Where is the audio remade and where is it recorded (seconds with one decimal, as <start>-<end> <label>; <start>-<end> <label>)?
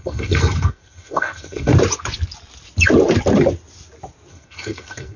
0.0-1.7 remade; 1.7-4.3 recorded; 4.3-5.2 remade